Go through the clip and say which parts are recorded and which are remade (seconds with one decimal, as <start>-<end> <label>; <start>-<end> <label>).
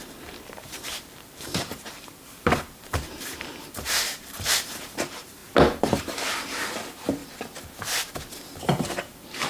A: 0.0-5.4 remade; 5.4-6.0 recorded; 6.0-7.2 remade; 7.2-8.6 recorded; 8.6-9.5 remade